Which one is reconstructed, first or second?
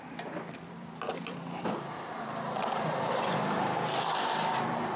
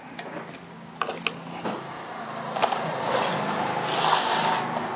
first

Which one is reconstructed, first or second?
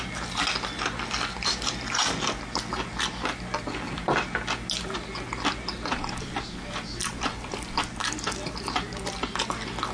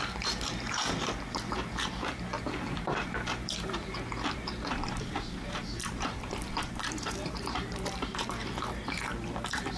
second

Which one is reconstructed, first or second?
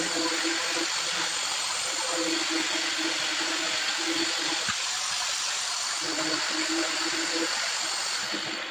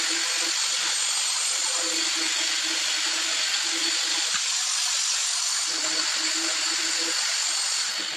first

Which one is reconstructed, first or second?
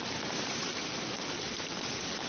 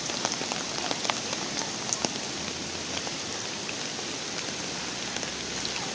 first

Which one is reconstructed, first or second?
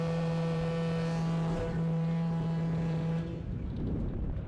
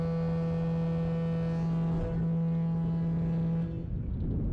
first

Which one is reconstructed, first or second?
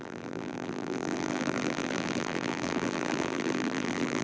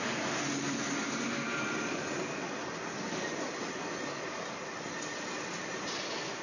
first